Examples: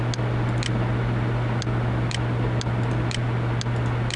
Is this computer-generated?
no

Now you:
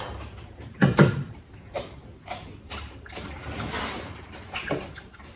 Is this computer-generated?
yes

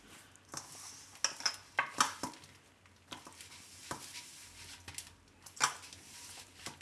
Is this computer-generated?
no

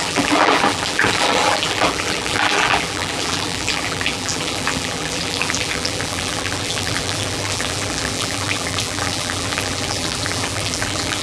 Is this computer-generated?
yes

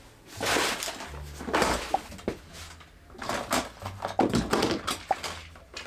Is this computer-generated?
no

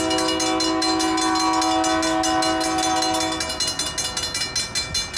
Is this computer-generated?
no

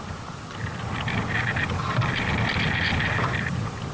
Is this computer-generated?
yes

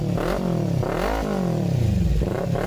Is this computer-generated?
no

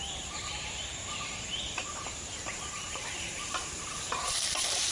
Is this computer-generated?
yes